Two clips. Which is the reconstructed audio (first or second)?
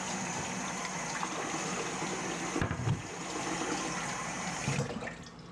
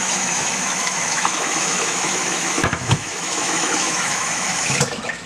second